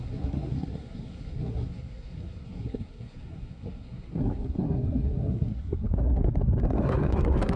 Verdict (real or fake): fake